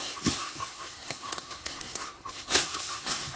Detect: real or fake fake